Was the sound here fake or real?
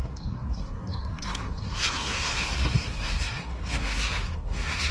fake